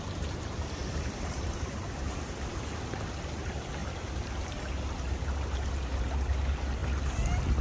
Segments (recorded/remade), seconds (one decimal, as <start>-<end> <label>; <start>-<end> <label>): 0.0-6.8 remade; 6.8-7.6 recorded

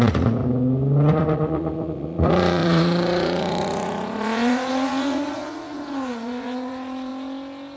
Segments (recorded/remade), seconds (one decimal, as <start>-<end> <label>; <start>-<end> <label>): 0.0-0.4 remade; 0.4-1.1 recorded; 1.1-7.1 remade; 7.1-7.8 recorded